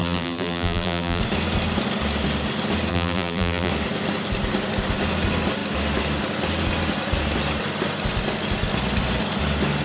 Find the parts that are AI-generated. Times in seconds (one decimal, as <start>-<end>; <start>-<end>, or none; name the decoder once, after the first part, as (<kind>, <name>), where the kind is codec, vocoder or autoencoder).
0.0-1.2 (vocoder, BigVGAN v2); 2.9-3.7